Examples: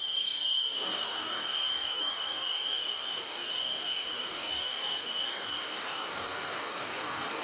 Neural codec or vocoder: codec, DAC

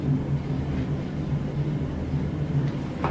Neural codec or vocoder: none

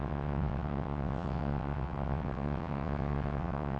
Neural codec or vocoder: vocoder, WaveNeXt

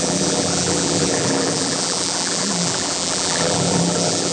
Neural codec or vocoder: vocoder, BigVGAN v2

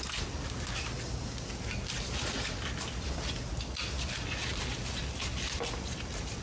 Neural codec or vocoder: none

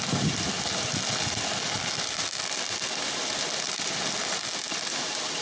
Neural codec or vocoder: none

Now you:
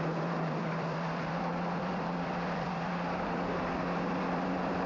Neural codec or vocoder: vocoder, BigVGAN v2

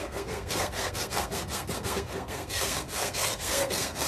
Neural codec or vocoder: codec, SNAC